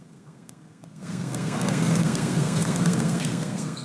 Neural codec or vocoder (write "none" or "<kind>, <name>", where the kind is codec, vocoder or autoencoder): codec, SNAC